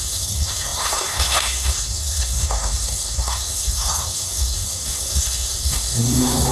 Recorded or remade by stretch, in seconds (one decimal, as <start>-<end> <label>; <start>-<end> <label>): 0.0-6.5 remade